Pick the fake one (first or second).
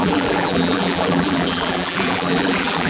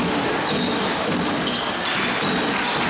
first